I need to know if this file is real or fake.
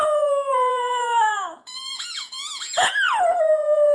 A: fake